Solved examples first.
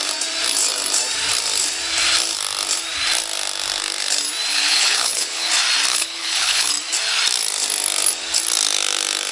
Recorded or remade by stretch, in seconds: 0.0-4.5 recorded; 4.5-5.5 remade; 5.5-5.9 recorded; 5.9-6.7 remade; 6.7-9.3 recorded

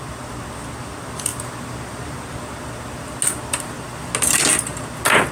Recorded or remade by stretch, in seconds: 0.0-5.3 recorded

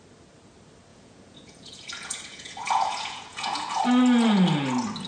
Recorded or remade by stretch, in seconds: 0.0-0.9 recorded; 0.9-3.8 remade; 3.8-5.1 recorded

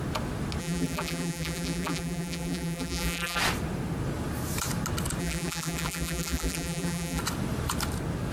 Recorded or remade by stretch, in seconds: 0.0-0.6 recorded; 0.6-3.4 remade; 3.4-5.2 recorded; 5.2-7.2 remade; 7.2-8.3 recorded

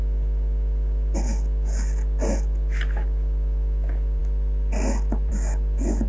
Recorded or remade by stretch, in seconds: 0.0-6.1 recorded

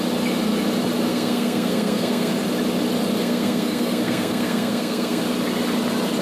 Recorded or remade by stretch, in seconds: 0.0-1.1 recorded; 1.1-2.3 remade; 2.3-3.2 recorded; 3.2-5.2 remade; 5.2-6.2 recorded

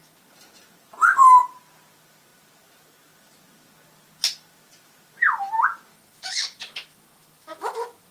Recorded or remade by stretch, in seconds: 0.0-5.9 recorded; 5.9-8.1 remade

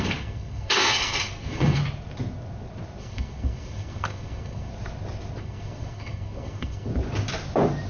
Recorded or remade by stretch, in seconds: 0.0-1.8 remade; 1.8-3.0 recorded; 3.0-4.7 remade; 4.7-5.4 recorded; 5.4-6.9 remade; 6.9-7.9 recorded